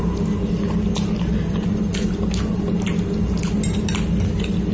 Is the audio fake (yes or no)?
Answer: no